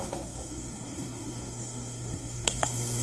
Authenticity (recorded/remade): remade